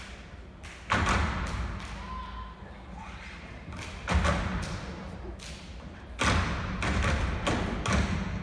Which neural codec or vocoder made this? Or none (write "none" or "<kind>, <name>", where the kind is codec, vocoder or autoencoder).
none